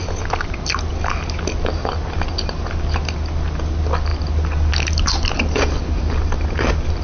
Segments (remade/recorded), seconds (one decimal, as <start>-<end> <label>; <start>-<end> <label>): 0.0-7.0 recorded